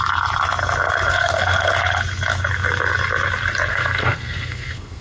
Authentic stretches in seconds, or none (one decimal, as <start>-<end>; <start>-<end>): 0.0-1.1; 1.7-3.7